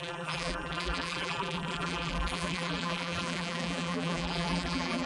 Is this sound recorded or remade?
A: remade